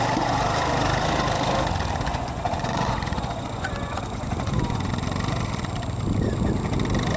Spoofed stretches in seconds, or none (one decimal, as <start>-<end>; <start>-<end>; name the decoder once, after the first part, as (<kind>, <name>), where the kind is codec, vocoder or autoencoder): 2.1-4.9 (vocoder, Vocos)